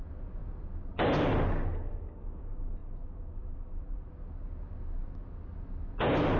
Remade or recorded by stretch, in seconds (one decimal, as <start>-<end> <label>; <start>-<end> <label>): 0.0-2.8 recorded; 2.8-4.1 remade; 4.1-6.4 recorded